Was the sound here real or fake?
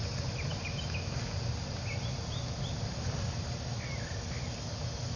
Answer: real